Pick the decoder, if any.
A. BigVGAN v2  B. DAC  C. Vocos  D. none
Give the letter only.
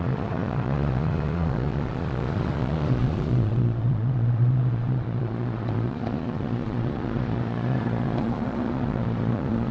C